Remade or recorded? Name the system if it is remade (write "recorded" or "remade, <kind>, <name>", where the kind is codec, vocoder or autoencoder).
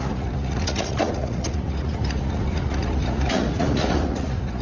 remade, vocoder, Vocos